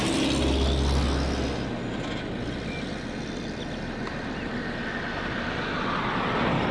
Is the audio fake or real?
real